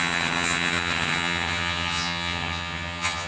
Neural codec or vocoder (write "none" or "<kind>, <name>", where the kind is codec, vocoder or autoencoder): vocoder, HiFi-GAN